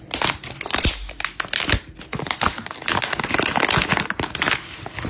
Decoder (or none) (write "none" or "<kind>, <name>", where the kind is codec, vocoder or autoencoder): none